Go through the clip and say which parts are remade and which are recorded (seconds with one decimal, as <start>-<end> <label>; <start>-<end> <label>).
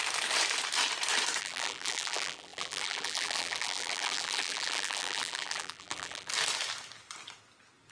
0.0-1.4 recorded; 1.4-6.3 remade; 6.3-7.9 recorded